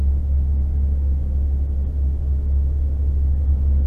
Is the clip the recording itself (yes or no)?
yes